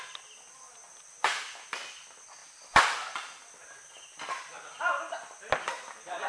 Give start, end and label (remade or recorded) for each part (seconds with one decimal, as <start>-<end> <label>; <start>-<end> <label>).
0.0-6.3 recorded